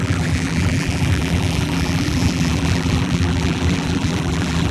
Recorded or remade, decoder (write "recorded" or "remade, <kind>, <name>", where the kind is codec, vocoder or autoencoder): remade, vocoder, BigVGAN v2